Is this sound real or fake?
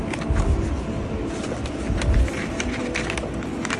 real